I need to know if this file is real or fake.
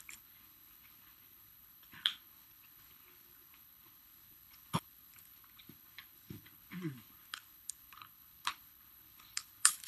fake